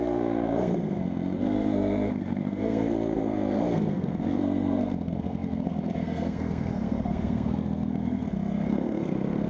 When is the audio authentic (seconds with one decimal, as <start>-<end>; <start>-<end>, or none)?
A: none